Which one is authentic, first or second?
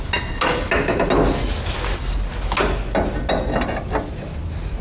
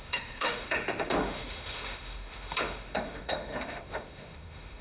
first